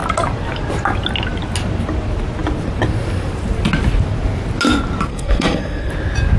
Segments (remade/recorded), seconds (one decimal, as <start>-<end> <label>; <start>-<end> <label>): 0.0-5.1 recorded; 5.1-5.9 remade; 5.9-6.4 recorded